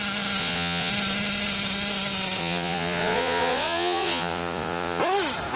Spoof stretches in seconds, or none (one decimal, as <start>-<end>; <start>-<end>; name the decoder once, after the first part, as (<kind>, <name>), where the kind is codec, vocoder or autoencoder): 0.4-0.9 (vocoder, Vocos); 2.4-5.0